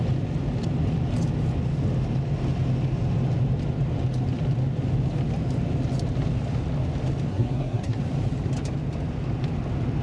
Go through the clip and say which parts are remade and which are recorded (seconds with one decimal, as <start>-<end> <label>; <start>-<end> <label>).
0.0-7.3 recorded; 7.3-8.0 remade; 8.0-10.0 recorded